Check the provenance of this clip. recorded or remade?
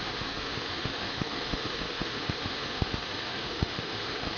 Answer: remade